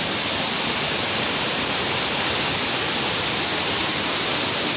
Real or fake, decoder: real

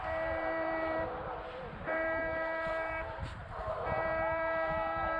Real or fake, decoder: fake, vocoder, BigVGAN v2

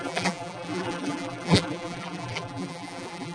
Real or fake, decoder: fake, vocoder, BigVGAN v2